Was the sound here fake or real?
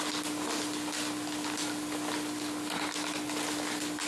real